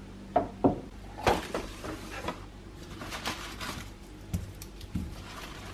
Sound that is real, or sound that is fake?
fake